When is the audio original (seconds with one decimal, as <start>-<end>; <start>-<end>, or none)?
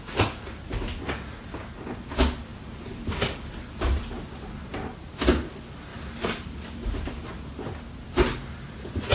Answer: 0.0-2.5; 4.0-5.9